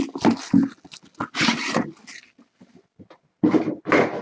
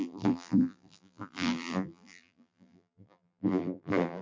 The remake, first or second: second